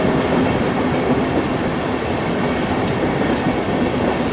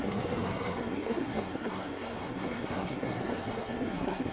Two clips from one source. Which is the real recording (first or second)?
first